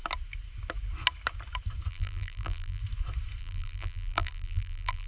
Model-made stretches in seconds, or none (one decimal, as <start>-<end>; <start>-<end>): 1.9-2.8; 3.4-5.1